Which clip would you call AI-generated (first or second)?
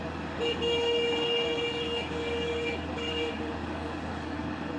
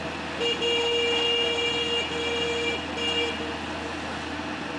first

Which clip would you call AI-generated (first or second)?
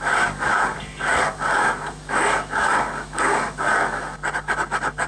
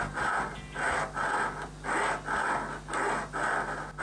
first